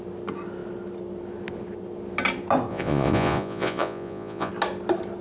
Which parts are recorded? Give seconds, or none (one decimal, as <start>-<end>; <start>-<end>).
0.0-2.7; 4.5-5.2